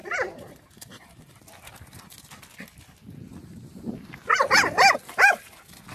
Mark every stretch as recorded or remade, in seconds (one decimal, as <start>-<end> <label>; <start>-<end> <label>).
0.0-1.4 remade; 1.4-5.9 recorded

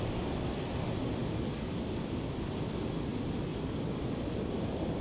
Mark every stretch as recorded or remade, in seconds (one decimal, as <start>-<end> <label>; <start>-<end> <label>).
0.0-5.0 remade

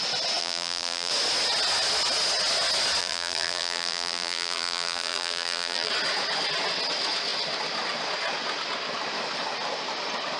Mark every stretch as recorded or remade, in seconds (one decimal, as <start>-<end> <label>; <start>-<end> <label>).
0.0-0.4 recorded; 0.4-1.1 remade; 1.1-3.0 recorded; 3.0-5.9 remade; 5.9-10.4 recorded

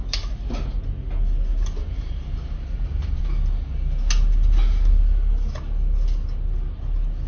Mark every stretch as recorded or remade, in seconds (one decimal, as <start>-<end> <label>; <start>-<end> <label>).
0.0-1.8 recorded; 1.8-3.2 remade; 3.2-7.3 recorded

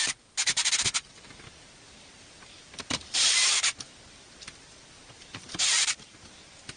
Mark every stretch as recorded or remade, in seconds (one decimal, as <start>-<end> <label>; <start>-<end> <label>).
0.0-2.1 recorded; 2.1-6.8 remade

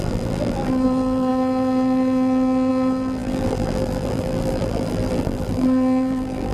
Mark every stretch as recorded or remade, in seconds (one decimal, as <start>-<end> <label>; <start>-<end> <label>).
0.0-6.5 remade

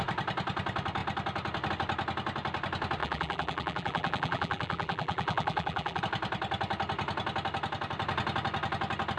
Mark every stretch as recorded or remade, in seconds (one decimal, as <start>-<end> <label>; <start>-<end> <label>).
0.0-3.0 recorded; 3.0-6.0 remade; 6.0-9.2 recorded